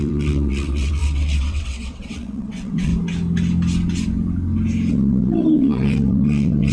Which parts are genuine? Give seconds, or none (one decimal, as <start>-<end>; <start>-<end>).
2.9-4.9